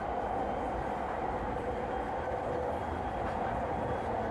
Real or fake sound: real